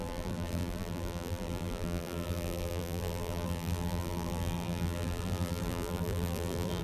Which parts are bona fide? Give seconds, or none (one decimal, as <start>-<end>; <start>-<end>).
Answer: none